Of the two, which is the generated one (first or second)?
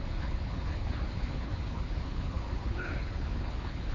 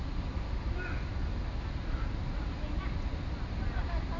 first